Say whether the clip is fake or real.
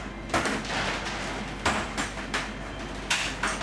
real